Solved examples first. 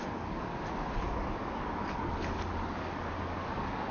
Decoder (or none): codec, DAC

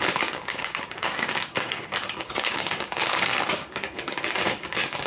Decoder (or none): codec, DAC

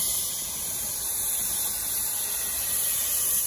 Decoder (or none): none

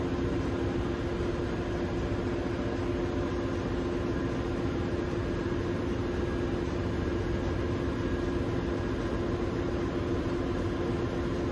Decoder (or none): none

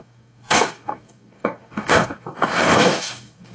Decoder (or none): codec, DAC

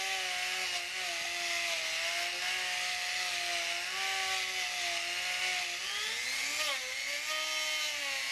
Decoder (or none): none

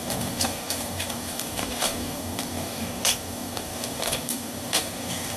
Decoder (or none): codec, DAC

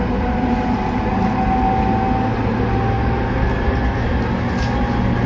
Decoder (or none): none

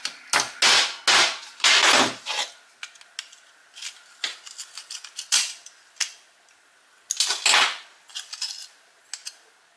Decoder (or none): none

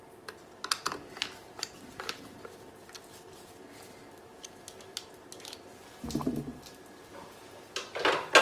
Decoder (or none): none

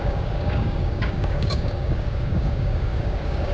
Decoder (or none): codec, DAC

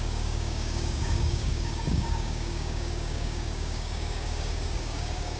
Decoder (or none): codec, DAC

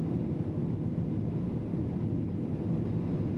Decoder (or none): none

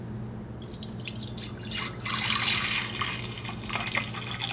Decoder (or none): none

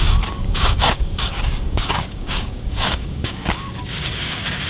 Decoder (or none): codec, DAC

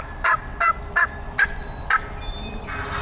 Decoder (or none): none